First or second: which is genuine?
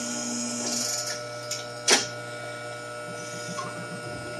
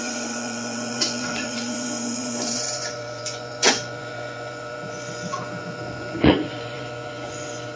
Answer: first